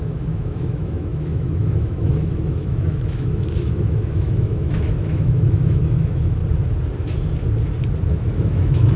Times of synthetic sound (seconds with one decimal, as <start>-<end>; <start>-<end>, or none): 0.0-6.4; 8.1-9.0